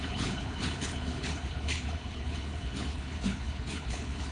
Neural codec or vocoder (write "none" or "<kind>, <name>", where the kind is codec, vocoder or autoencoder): codec, HILCodec